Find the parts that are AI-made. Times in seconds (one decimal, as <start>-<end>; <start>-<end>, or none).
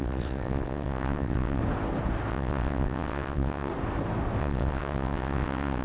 0.0-1.6; 2.3-3.7; 4.4-5.8